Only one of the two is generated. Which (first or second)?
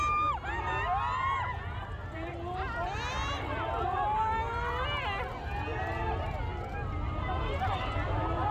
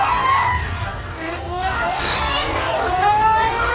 second